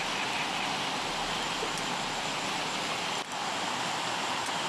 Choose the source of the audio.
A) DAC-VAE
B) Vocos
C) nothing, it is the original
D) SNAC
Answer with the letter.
C